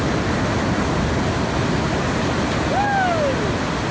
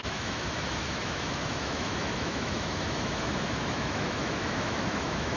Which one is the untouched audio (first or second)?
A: first